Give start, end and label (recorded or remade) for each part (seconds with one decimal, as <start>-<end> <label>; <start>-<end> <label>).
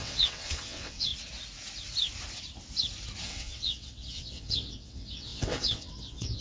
0.0-1.1 remade; 1.1-3.2 recorded; 3.2-6.4 remade